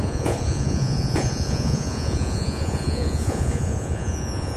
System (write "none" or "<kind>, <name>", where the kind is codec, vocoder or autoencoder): vocoder, Vocos